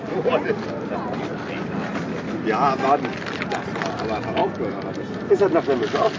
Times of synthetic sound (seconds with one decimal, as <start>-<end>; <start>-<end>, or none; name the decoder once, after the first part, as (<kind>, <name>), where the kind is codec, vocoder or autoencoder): none